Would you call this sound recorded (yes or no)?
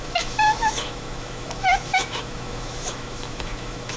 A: no